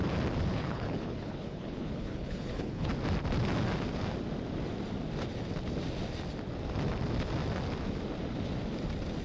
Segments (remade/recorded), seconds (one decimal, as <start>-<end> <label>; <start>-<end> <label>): 0.0-0.5 recorded; 0.5-2.9 remade; 2.9-9.2 recorded